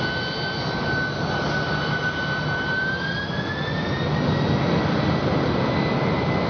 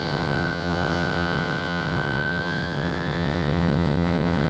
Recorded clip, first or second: first